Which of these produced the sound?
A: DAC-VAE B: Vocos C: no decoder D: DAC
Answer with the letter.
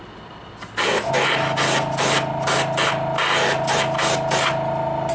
C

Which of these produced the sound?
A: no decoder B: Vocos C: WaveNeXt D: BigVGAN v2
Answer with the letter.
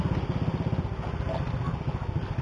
A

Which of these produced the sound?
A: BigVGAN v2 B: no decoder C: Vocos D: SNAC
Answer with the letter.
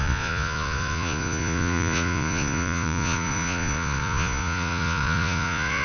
C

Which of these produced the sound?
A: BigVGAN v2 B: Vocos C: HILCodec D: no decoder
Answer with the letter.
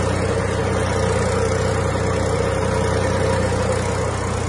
D